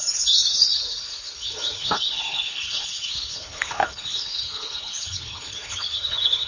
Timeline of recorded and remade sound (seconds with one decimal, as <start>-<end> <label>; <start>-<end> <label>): 0.0-6.5 remade